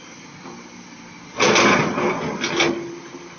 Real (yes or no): yes